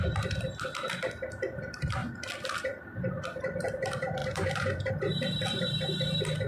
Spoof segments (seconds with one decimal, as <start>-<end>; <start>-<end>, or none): 4.2-4.9